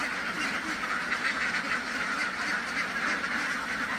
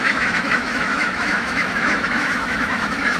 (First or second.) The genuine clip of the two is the first